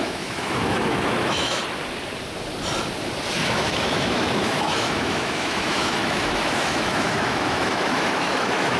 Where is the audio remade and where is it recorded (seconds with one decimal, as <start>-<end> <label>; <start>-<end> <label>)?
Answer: 0.0-1.6 remade; 1.6-3.4 recorded; 3.4-8.8 remade

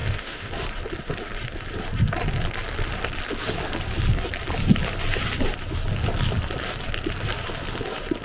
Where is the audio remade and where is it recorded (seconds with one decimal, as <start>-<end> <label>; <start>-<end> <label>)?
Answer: 0.0-0.5 remade; 0.5-8.2 recorded

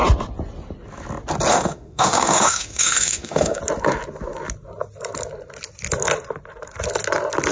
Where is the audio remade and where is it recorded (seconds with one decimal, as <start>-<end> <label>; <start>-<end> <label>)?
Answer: 0.0-1.5 recorded; 1.5-3.6 remade; 3.6-7.5 recorded

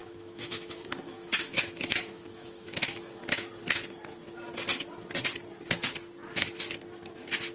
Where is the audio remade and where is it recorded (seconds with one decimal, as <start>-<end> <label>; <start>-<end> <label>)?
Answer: 0.0-3.2 remade; 3.2-7.5 recorded